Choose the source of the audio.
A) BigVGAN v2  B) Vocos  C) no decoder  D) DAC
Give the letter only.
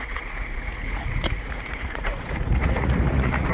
B